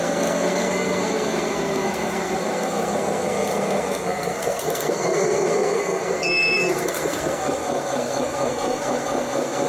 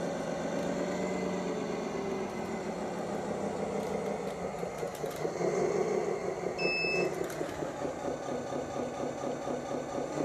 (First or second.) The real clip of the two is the second